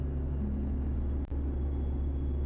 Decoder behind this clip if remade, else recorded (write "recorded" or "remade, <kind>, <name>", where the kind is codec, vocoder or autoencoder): recorded